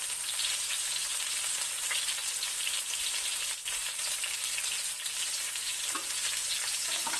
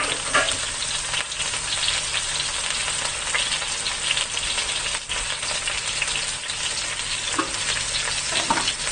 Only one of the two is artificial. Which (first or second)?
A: first